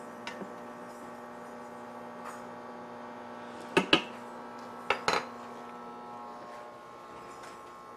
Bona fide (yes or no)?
yes